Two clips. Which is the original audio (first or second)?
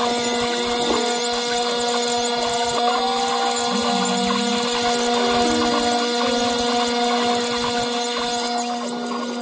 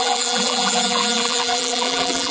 first